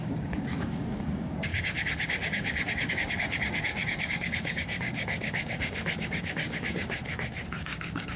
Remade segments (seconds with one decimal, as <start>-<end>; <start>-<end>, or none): 0.0-1.5; 2.9-7.0; 7.6-8.2